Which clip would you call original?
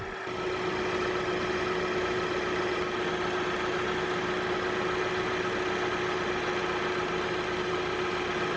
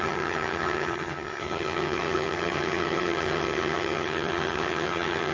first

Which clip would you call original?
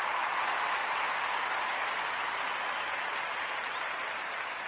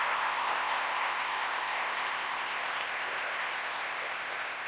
first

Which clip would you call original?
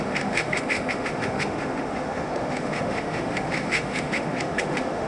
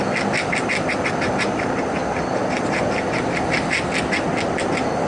second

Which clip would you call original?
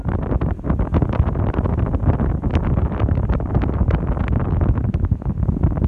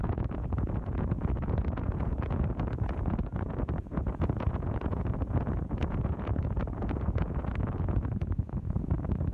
first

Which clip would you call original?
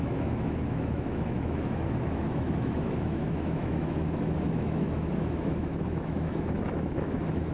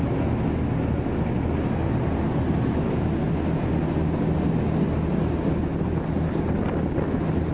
second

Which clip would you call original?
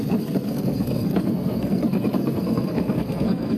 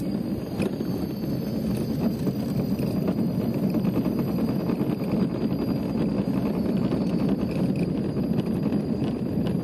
second